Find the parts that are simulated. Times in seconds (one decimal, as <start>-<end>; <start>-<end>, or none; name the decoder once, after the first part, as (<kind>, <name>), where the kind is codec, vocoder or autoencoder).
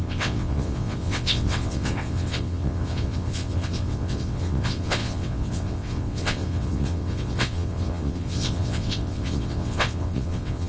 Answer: 0.0-10.7 (vocoder, WaveNeXt)